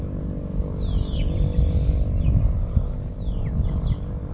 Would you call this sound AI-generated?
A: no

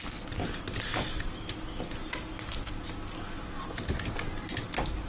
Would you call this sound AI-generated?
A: no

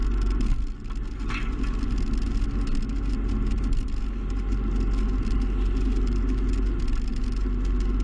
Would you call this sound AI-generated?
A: no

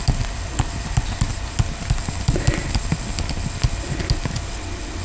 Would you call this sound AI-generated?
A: no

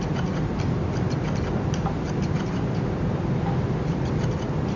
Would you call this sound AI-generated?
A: no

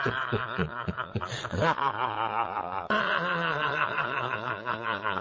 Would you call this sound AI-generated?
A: yes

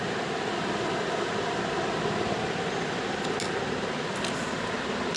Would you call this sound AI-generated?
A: no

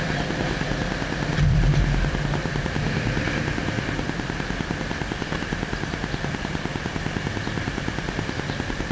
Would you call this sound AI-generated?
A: no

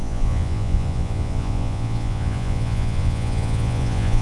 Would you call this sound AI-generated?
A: yes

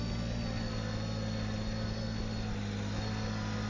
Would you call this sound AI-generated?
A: no